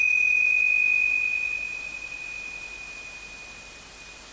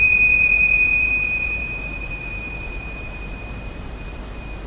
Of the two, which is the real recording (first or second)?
first